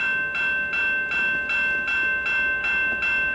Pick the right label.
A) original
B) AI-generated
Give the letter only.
A